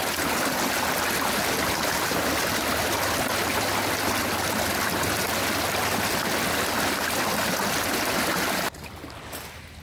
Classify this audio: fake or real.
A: real